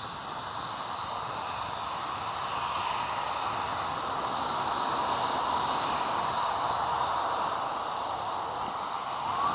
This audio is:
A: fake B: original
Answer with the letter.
B